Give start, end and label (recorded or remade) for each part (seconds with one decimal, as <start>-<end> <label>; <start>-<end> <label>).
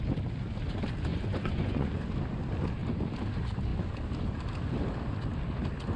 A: 0.0-1.1 recorded; 1.1-2.1 remade; 2.1-6.0 recorded